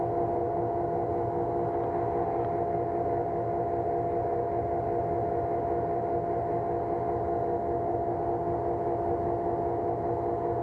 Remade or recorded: recorded